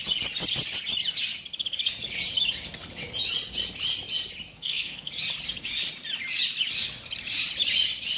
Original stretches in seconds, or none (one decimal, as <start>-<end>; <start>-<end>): 0.0-4.5; 5.1-8.2